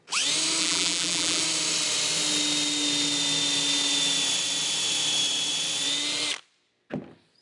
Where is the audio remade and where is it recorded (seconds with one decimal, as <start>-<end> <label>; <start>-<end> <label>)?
0.0-0.6 recorded; 0.6-1.4 remade; 1.4-7.4 recorded